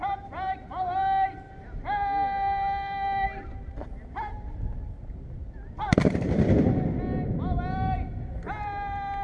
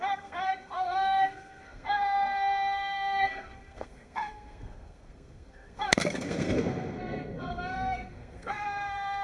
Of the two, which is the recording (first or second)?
first